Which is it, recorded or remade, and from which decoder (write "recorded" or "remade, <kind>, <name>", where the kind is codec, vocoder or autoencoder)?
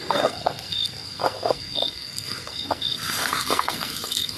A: remade, codec, SNAC